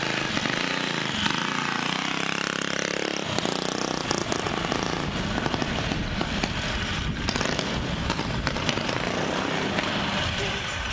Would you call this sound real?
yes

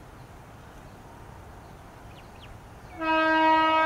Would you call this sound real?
yes